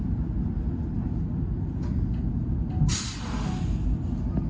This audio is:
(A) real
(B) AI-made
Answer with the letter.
A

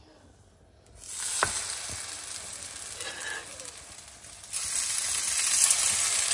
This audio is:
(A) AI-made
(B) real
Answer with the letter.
B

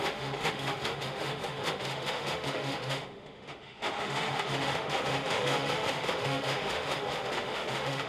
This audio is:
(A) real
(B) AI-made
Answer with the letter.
B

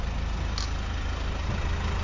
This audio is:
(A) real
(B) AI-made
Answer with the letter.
A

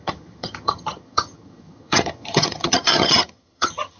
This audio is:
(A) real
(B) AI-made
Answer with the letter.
B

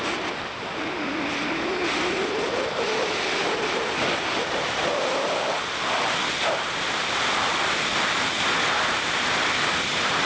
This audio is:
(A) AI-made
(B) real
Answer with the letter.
B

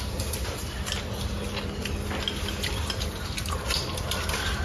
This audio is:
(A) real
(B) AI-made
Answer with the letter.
A